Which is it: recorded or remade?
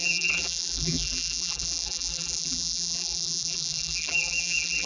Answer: remade